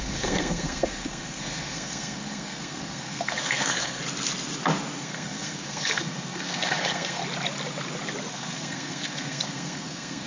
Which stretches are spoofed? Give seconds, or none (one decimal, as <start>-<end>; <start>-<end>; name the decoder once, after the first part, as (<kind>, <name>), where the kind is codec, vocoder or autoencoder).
0.0-4.0 (codec, SNAC); 5.0-7.2; 8.3-10.3